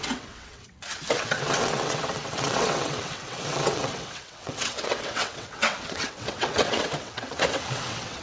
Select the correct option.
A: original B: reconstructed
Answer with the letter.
B